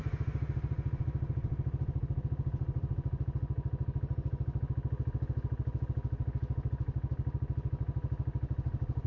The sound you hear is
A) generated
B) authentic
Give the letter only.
B